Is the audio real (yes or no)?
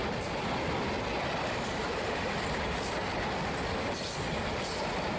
yes